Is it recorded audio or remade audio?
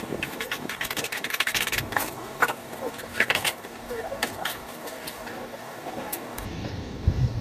remade